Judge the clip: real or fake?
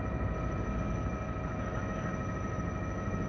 fake